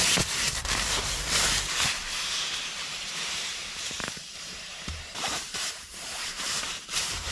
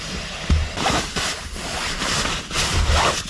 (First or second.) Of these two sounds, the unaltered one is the second